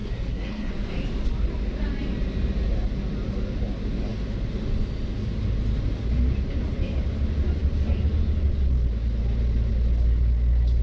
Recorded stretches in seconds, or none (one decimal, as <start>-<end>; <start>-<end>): 0.7-10.8

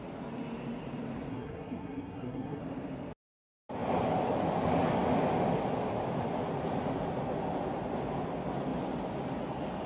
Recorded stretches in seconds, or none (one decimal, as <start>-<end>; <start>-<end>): 0.0-1.3; 2.6-9.9